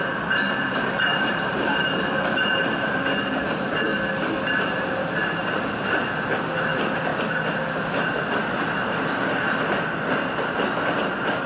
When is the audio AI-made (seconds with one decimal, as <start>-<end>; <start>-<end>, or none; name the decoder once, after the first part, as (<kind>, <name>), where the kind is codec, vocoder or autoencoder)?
0.0-3.9 (vocoder, BigVGAN v2); 4.7-7.1